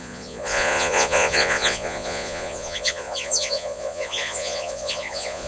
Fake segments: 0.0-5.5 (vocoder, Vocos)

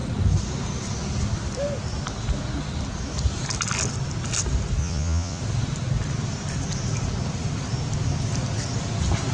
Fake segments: 4.8-5.4 (vocoder, Vocos)